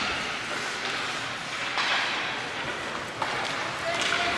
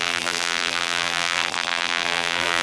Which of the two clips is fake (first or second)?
second